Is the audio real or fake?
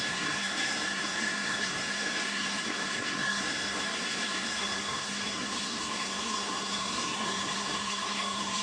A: fake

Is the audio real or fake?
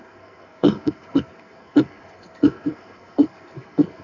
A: fake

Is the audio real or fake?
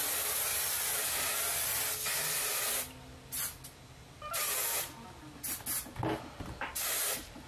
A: real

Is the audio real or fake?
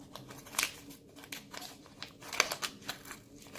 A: real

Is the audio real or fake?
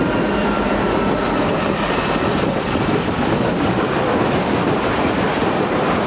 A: real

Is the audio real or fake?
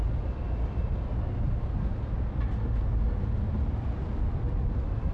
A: real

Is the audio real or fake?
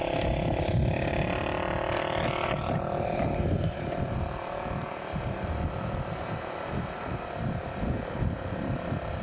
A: real